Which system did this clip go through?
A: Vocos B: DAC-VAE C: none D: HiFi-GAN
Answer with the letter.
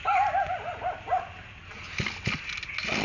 C